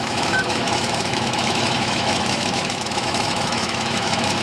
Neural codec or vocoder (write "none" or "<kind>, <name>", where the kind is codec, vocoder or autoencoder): autoencoder, DAC-VAE